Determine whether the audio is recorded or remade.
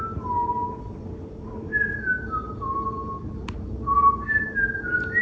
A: recorded